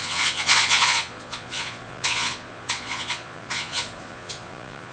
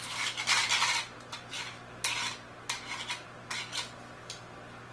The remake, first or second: first